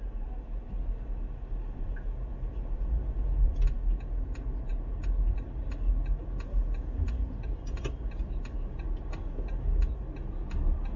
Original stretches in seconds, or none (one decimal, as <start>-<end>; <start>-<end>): 0.0-11.0